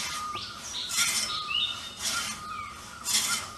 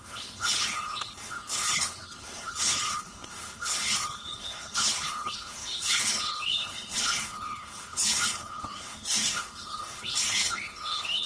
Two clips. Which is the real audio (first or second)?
first